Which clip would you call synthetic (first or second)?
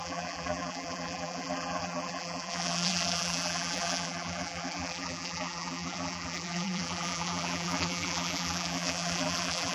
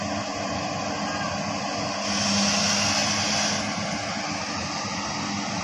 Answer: first